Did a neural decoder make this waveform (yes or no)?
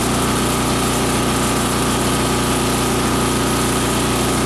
no